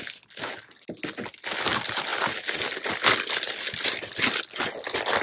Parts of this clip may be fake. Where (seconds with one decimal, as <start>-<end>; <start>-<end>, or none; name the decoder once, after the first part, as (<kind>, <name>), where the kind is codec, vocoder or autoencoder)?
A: none